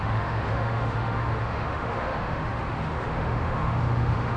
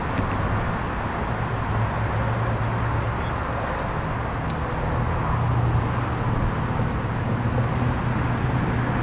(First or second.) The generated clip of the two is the first